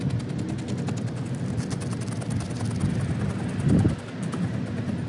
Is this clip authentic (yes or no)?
yes